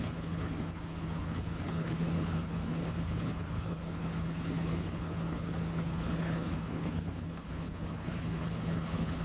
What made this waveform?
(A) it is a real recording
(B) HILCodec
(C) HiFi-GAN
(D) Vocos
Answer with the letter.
B